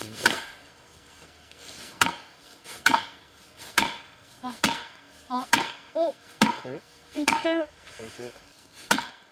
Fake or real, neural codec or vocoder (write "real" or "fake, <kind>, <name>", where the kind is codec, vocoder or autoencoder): fake, codec, SNAC